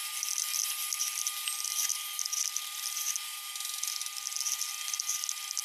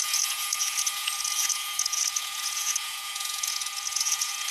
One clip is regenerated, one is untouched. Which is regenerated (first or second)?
second